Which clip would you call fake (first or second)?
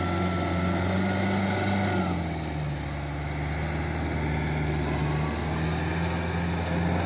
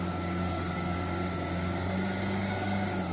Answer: second